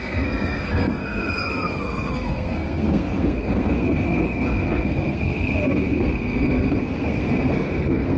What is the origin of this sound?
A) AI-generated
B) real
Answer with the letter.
A